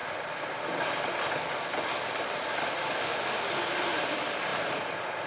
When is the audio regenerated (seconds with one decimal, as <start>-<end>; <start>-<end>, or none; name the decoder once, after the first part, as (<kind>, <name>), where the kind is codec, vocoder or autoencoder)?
0.0-3.2 (vocoder, BigVGAN v2); 4.5-5.3